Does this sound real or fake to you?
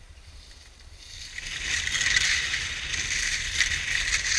fake